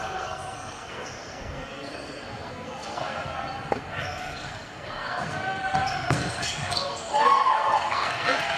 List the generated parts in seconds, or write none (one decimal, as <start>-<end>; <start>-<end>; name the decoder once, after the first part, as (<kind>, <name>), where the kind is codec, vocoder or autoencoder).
0.0-8.6 (codec, SNAC)